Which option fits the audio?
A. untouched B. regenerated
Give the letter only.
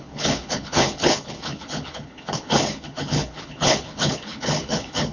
B